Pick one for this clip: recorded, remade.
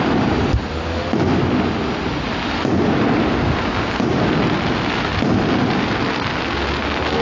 recorded